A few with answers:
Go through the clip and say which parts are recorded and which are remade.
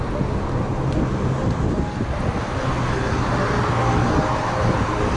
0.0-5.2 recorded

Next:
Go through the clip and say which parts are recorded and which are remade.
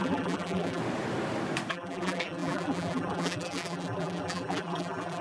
0.0-0.8 remade; 0.8-1.7 recorded; 1.7-5.2 remade